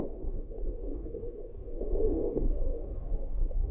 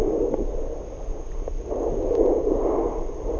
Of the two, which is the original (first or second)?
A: second